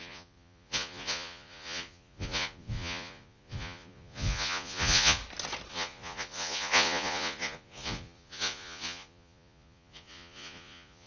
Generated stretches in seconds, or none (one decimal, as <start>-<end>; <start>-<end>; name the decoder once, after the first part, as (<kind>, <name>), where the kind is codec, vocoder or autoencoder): 0.0-5.2 (vocoder, Vocos); 5.7-11.1